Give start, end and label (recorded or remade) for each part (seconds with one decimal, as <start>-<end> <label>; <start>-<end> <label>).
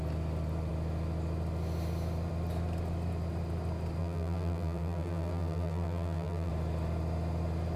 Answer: 0.0-4.0 recorded; 4.0-6.5 remade; 6.5-7.8 recorded